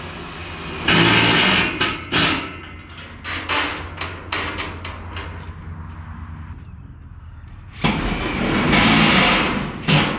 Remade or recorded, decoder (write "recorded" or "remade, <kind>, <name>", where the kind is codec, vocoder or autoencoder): recorded